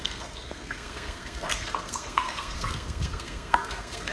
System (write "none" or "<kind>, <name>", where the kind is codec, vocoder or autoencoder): codec, SNAC